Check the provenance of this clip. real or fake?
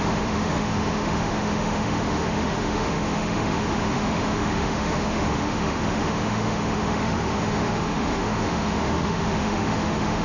fake